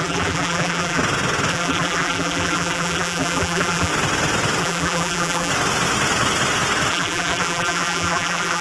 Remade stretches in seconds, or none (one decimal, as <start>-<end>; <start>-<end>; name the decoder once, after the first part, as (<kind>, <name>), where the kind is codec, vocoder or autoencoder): 0.0-1.0 (vocoder, BigVGAN v2); 1.5-3.9; 4.6-5.5; 6.9-8.6